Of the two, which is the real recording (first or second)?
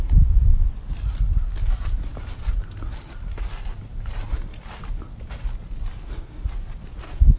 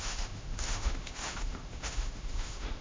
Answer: first